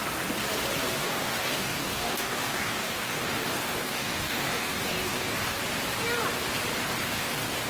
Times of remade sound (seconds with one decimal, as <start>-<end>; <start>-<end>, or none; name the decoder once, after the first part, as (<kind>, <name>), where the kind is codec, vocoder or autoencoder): 1.0-5.6 (codec, DAC); 7.0-7.7